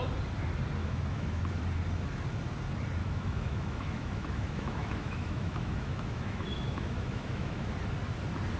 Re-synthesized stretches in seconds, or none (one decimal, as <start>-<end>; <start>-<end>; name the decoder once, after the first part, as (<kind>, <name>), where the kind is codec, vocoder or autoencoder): 0.8-1.4 (autoencoder, DAC-VAE); 3.0-7.7